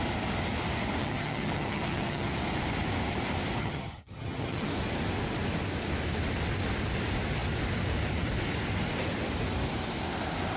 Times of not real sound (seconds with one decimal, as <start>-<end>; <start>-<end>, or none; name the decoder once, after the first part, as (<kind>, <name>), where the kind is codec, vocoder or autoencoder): 1.0-2.3 (vocoder, HiFi-GAN); 3.6-4.7